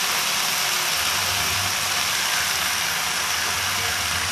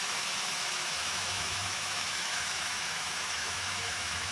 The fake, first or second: second